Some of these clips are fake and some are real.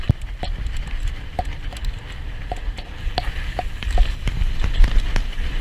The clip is real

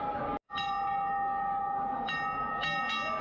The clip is real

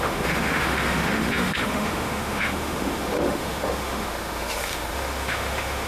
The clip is fake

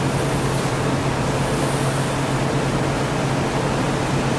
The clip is real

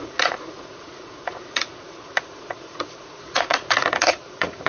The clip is fake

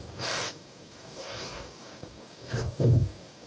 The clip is fake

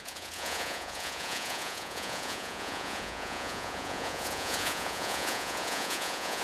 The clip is fake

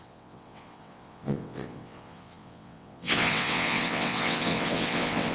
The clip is fake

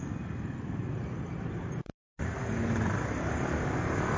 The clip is real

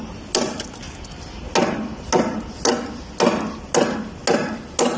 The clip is real